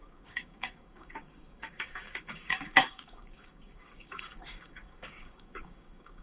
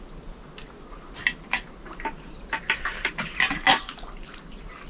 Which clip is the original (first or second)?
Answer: second